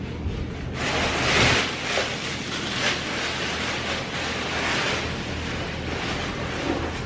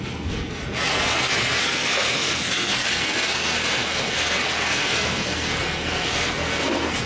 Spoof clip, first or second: second